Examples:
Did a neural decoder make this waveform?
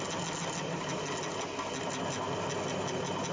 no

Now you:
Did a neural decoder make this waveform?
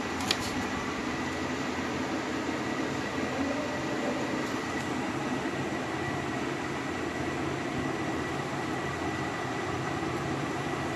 no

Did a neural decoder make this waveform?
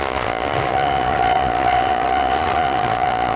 yes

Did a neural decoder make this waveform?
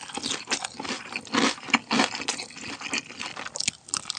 no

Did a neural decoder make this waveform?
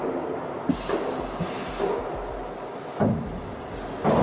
no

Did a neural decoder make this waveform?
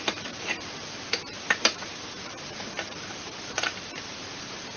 yes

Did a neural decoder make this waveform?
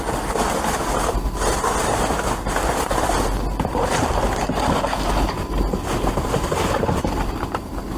no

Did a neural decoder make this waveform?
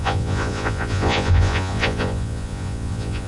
yes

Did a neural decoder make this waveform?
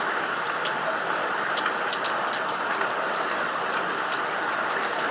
no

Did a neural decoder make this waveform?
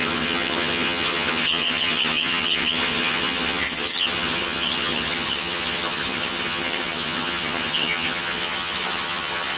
yes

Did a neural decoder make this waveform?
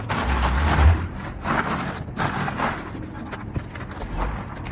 no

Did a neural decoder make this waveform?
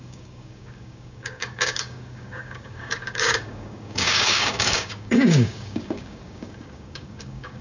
yes